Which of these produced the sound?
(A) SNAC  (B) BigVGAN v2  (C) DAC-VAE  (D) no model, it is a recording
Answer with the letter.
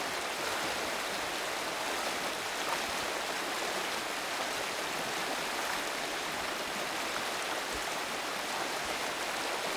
D